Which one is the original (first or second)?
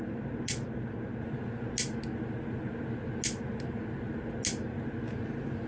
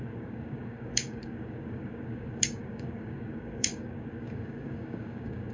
first